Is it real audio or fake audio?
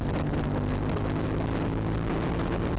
real